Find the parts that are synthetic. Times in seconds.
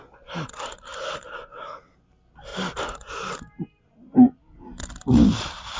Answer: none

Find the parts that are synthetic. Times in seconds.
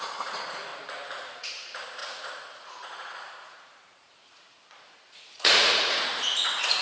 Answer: 0.0-0.7 (vocoder, Vocos); 1.4-6.8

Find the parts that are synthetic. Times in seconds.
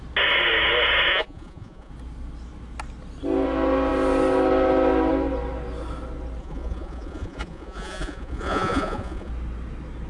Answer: 1.1-1.9 (vocoder, Vocos); 6.4-9.3